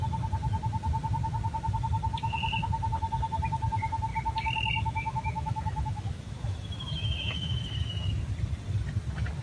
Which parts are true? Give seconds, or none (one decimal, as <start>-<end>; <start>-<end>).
0.0-4.1; 8.2-9.4